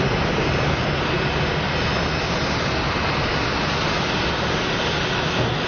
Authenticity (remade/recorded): recorded